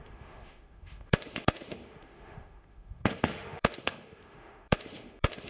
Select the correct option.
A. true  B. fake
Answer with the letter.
B